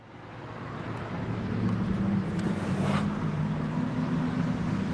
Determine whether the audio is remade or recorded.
recorded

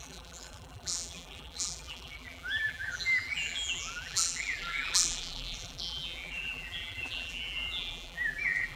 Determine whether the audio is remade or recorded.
remade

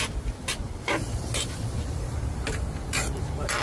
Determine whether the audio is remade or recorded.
remade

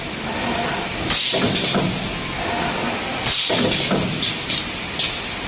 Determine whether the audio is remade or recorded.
recorded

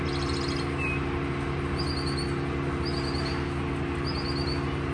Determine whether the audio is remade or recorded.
recorded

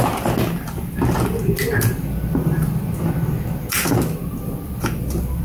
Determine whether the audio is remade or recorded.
recorded